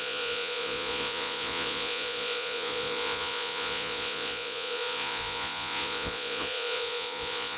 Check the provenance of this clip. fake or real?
fake